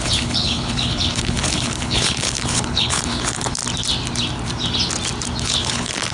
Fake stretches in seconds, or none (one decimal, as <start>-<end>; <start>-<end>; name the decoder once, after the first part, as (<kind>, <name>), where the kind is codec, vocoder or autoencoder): 0.0-3.6 (codec, HILCodec); 5.4-6.1